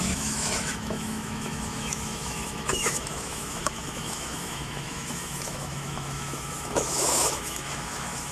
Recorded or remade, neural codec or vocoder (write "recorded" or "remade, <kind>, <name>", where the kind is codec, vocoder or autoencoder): remade, autoencoder, DAC-VAE